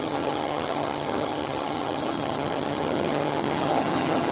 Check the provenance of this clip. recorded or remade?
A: remade